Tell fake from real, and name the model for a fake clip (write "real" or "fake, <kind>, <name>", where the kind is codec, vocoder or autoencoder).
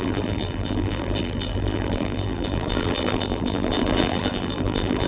fake, vocoder, BigVGAN v2